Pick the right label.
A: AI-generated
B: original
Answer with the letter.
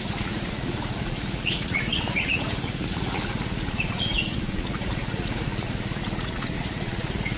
A